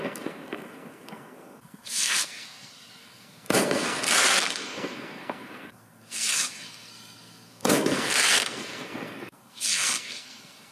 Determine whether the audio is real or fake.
fake